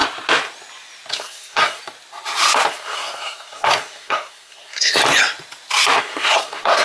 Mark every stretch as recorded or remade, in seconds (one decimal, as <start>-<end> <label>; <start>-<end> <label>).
0.0-1.1 recorded; 1.1-1.8 remade; 1.8-2.7 recorded; 2.7-5.0 remade; 5.0-6.0 recorded; 6.0-6.8 remade